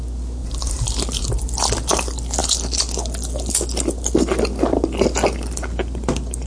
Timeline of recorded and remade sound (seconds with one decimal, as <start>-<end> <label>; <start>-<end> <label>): 0.0-6.5 recorded